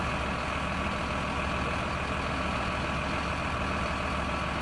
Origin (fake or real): real